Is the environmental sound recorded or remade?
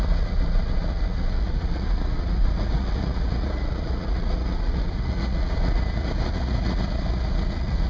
remade